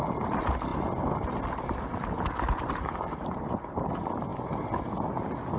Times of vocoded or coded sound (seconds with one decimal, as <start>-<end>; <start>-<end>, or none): none